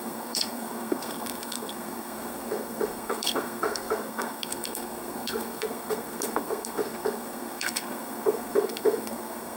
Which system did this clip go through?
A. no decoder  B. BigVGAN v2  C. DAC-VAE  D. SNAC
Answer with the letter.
D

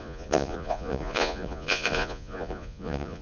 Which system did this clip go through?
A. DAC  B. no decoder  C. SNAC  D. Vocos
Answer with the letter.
D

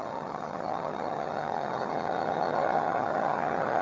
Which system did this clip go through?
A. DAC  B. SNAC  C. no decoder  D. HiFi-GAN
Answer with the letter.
D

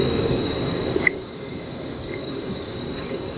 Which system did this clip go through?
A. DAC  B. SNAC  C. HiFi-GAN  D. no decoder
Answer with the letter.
A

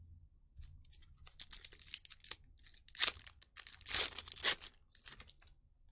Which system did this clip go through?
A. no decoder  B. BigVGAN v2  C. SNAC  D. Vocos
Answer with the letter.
A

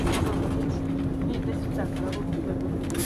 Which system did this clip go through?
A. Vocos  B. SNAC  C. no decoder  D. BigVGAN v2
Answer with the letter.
C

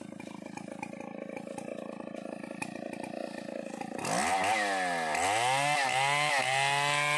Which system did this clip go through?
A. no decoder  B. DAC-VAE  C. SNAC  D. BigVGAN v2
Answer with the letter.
A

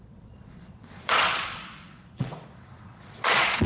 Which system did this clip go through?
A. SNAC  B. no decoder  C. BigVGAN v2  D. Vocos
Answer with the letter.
D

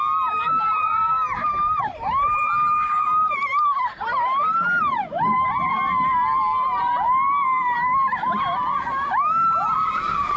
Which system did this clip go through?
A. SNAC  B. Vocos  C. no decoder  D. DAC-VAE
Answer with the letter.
C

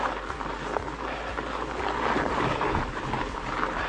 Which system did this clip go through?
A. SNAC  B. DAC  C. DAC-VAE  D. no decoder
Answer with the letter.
D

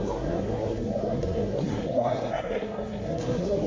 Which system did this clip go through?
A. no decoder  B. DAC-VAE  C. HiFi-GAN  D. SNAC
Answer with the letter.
D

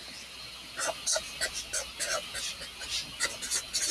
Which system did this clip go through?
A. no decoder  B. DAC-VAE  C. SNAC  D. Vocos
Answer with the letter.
A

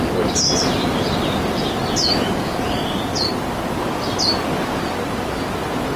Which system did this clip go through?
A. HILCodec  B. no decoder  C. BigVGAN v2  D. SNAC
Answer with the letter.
B